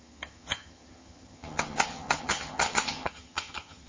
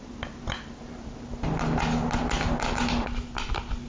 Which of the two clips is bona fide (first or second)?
second